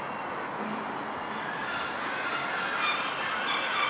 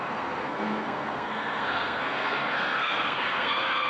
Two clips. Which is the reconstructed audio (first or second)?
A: second